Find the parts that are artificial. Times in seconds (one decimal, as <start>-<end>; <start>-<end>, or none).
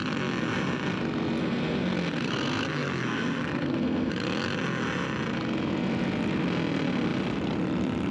1.4-4.1